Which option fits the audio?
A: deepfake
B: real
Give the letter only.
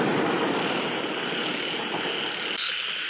B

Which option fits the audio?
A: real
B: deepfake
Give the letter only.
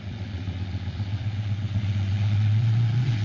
B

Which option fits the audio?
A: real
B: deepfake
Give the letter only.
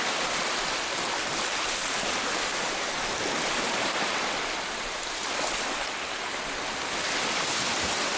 A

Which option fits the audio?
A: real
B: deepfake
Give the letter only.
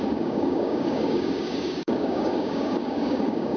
B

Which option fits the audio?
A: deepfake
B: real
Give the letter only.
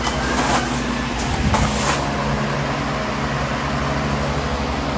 B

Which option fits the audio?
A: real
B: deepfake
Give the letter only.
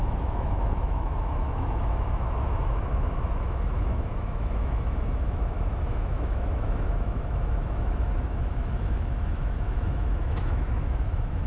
B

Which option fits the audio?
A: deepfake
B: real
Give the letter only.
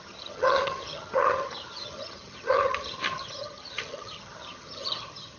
A